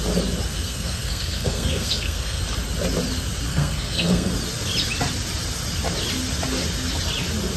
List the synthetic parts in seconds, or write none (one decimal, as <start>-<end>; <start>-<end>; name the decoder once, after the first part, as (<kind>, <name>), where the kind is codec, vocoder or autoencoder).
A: 0.5-2.4 (codec, SNAC); 3.5-4.3